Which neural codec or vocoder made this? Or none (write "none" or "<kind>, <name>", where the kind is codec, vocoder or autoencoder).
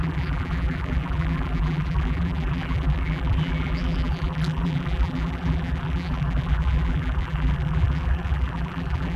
vocoder, BigVGAN v2